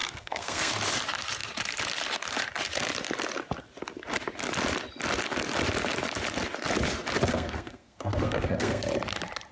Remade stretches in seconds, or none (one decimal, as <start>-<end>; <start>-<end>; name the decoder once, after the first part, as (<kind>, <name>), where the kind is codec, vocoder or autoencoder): 0.0-0.7 (codec, SNAC); 7.3-8.8